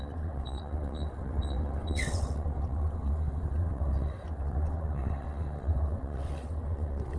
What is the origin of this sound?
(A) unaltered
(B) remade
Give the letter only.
B